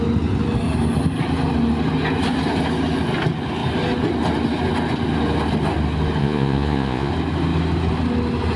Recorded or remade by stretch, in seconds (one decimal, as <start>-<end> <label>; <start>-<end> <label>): 0.0-6.2 recorded; 6.2-7.1 remade; 7.1-8.6 recorded